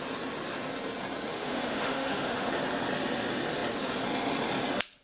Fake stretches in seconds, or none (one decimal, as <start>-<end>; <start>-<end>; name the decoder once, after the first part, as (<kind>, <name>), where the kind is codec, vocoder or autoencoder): 1.3-2.5 (autoencoder, DAC-VAE)